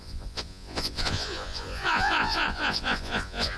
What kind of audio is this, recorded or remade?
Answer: remade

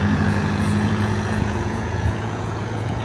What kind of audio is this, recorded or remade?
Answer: remade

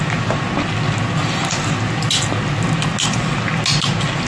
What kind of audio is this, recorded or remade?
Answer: recorded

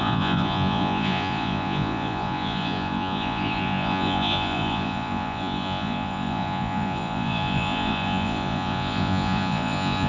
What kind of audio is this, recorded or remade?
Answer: remade